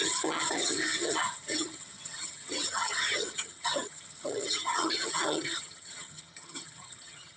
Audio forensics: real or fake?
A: fake